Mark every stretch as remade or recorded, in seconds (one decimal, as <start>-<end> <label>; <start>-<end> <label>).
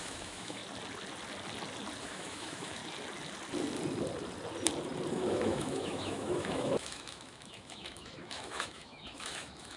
0.0-0.6 remade; 0.6-2.0 recorded; 2.0-2.8 remade; 2.8-5.1 recorded; 5.1-9.8 remade